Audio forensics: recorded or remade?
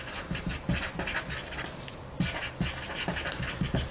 recorded